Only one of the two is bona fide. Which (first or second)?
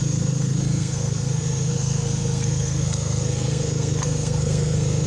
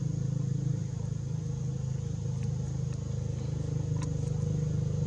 second